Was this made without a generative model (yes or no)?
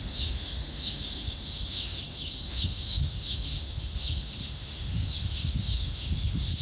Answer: no